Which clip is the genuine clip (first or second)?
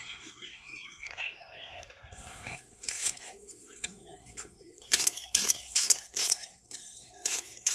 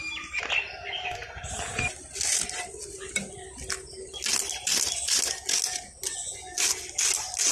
second